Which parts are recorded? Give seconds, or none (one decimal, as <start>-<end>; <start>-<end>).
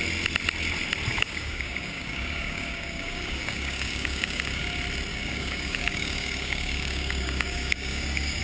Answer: 0.0-1.1; 4.6-5.1